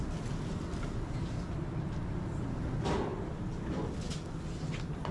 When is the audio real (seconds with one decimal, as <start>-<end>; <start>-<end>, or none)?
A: 0.0-5.1